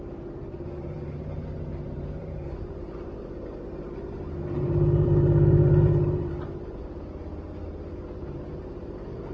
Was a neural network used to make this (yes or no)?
yes